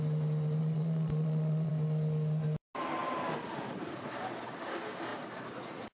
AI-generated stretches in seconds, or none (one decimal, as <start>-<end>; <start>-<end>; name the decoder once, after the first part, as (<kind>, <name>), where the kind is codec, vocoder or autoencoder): 0.6-1.7 (vocoder, Vocos)